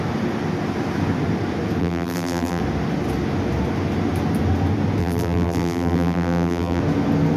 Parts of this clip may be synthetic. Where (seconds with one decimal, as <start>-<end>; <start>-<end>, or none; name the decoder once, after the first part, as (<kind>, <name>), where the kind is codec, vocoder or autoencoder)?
1.8-2.6 (vocoder, BigVGAN v2); 5.0-6.8